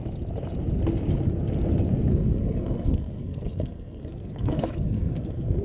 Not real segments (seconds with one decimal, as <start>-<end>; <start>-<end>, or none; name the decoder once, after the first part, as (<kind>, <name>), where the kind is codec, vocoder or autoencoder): 2.1-5.6 (codec, SNAC)